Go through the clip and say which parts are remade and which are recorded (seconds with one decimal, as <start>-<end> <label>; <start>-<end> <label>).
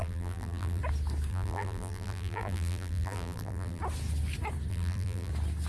0.0-0.8 remade; 0.8-1.3 recorded; 1.3-3.8 remade; 3.8-4.7 recorded; 4.7-5.3 remade; 5.3-5.7 recorded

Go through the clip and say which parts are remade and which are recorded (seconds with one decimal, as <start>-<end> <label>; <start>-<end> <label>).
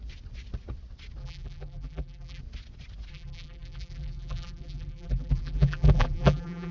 0.0-1.2 recorded; 1.2-2.4 remade; 2.4-3.1 recorded; 3.1-6.7 remade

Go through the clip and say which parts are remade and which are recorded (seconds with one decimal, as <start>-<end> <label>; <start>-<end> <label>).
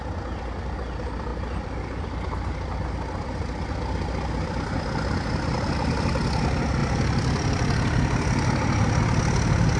0.0-6.8 recorded; 6.8-9.0 remade; 9.0-9.8 recorded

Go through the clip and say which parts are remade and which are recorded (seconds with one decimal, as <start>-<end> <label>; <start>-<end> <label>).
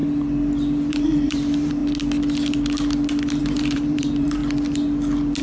0.0-0.9 recorded; 0.9-1.8 remade; 1.8-3.4 recorded; 3.4-4.4 remade; 4.4-5.4 recorded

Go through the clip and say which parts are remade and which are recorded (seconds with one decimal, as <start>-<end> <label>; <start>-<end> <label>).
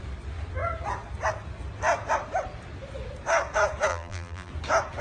0.0-3.9 recorded; 3.9-4.5 remade; 4.5-5.0 recorded